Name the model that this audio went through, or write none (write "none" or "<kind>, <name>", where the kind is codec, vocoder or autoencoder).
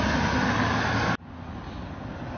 none